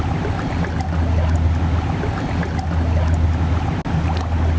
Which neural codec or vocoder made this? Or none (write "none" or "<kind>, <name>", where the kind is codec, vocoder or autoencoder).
none